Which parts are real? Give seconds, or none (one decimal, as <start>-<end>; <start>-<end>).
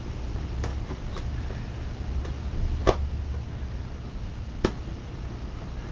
0.0-5.9